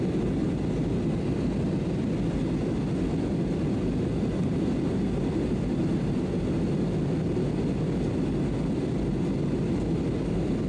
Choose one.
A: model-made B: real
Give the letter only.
B